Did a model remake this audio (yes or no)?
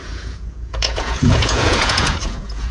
yes